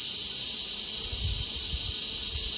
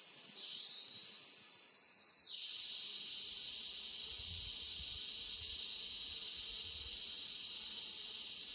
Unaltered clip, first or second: first